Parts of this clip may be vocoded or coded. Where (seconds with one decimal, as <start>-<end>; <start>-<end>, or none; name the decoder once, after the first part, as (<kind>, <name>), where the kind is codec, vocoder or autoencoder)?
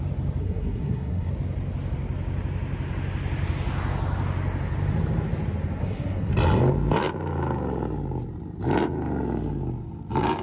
0.4-1.3 (codec, SNAC); 5.8-6.3